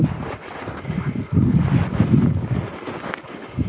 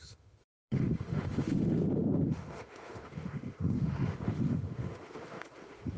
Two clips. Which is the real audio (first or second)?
first